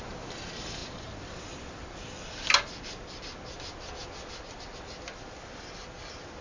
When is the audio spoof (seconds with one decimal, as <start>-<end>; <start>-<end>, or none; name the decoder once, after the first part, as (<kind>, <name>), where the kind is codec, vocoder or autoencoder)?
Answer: none